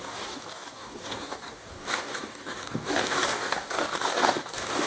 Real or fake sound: fake